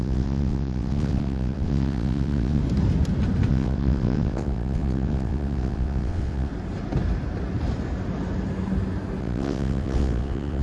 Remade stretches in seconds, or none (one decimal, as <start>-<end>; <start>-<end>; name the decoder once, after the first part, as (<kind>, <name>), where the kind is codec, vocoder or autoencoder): 0.0-2.6 (vocoder, WaveNeXt); 3.5-6.5; 9.2-10.6